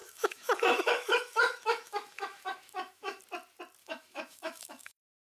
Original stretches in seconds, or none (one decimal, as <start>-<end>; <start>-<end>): 3.2-3.8